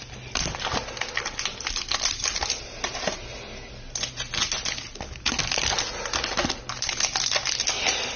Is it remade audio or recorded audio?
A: recorded